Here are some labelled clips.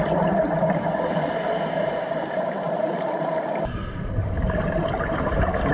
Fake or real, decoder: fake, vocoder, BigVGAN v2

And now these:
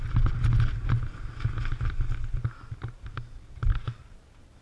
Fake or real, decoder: real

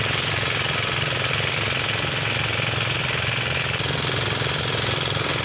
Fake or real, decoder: real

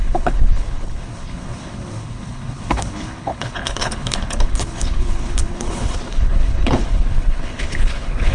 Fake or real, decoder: fake, codec, HILCodec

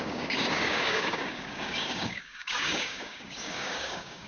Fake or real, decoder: fake, codec, DAC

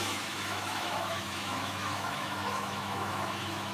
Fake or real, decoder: fake, autoencoder, DAC-VAE